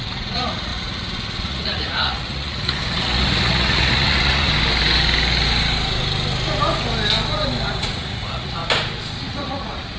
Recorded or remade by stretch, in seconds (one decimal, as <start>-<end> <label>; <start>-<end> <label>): 0.0-4.5 remade; 4.5-7.8 recorded; 7.8-8.6 remade; 8.6-9.2 recorded; 9.2-10.0 remade